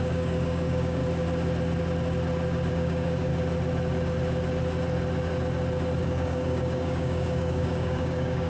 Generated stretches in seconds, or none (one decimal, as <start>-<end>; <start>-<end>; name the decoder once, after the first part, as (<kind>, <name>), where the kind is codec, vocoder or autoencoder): 0.0-1.0 (codec, DAC); 2.7-3.3; 6.0-8.5